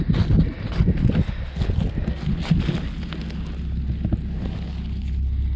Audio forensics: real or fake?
real